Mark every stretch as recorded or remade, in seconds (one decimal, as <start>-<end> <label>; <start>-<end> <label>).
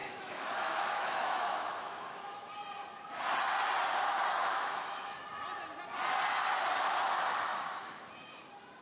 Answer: 0.0-2.5 remade; 2.5-4.4 recorded; 4.4-5.2 remade; 5.2-7.5 recorded; 7.5-8.1 remade; 8.1-8.8 recorded